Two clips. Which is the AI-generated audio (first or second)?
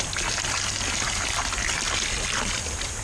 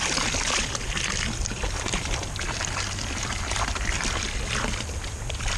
second